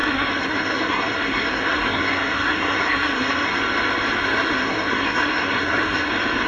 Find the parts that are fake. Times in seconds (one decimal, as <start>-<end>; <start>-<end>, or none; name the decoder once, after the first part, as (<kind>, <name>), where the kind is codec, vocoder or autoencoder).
0.0-3.5 (codec, SNAC); 4.2-6.1